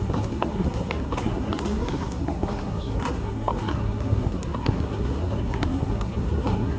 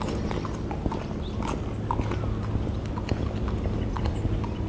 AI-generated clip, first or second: first